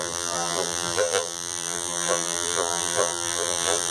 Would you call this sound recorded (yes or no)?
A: no